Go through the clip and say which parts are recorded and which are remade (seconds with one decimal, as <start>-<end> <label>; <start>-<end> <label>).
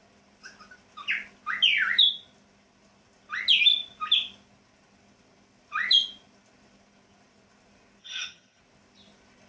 0.0-8.0 recorded; 8.0-8.6 remade; 8.6-9.5 recorded